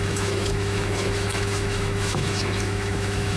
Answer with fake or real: fake